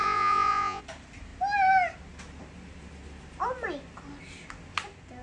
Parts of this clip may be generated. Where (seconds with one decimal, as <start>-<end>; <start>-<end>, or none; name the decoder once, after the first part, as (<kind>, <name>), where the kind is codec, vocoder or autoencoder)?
0.0-0.8 (vocoder, Vocos)